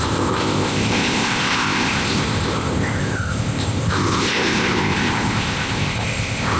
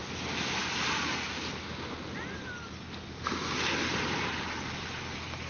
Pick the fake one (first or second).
first